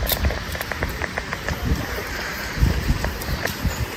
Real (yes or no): no